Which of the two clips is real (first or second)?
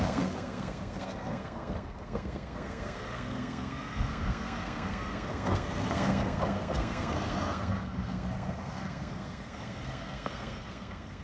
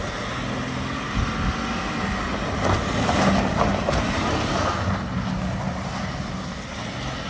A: second